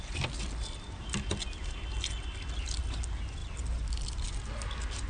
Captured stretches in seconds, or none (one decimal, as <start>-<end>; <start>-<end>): 0.0-5.1